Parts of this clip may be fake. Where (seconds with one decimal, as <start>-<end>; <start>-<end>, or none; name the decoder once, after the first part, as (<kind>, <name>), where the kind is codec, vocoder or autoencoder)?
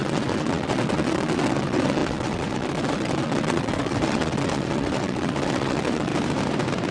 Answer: 0.0-6.1 (vocoder, WaveNeXt)